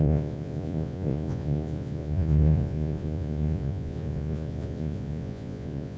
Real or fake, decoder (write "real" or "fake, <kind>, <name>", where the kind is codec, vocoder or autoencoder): fake, vocoder, Vocos